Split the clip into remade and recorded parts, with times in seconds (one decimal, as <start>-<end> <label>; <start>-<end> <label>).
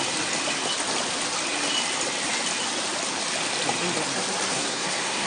0.0-4.5 recorded; 4.5-5.3 remade